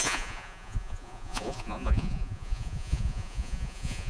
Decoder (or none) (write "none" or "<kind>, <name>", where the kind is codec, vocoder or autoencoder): vocoder, Vocos